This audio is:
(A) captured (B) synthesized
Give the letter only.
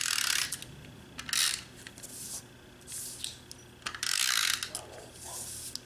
A